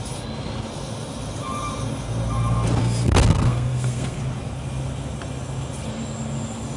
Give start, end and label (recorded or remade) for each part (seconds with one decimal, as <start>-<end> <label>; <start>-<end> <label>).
0.0-2.8 recorded; 2.8-4.2 remade; 4.2-6.8 recorded